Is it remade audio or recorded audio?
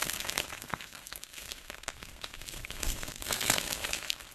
remade